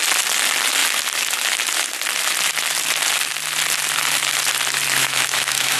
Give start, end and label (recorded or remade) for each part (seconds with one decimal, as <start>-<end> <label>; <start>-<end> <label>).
0.0-5.0 recorded; 5.0-5.8 remade